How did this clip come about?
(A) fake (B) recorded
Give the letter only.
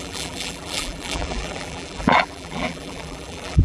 A